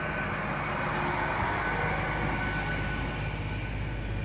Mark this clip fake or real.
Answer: real